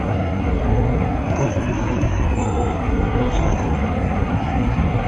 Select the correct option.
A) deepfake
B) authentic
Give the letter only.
A